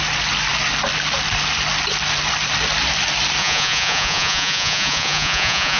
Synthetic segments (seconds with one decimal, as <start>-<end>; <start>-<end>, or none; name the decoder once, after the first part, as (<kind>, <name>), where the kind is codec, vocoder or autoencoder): 3.4-5.8 (vocoder, Vocos)